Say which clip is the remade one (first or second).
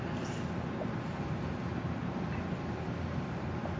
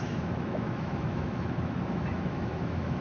second